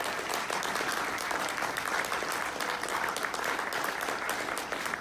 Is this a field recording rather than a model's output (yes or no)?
yes